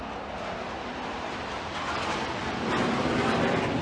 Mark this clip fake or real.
real